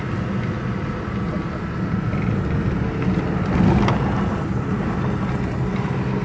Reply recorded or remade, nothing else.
recorded